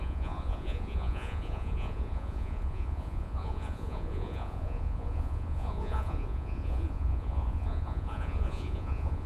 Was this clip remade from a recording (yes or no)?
yes